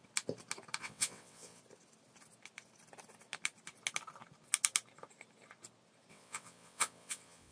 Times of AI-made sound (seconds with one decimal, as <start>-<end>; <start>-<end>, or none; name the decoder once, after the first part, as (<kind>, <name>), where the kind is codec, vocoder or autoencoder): 0.8-1.6 (vocoder, WaveNeXt); 6.1-7.5